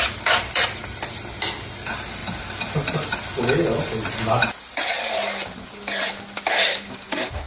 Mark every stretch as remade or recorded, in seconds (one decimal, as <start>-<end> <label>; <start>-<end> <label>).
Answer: 0.0-6.7 recorded; 6.7-7.5 remade